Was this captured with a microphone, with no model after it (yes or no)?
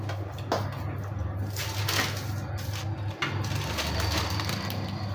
yes